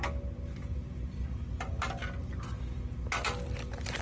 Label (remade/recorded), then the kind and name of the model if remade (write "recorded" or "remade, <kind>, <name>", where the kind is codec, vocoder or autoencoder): recorded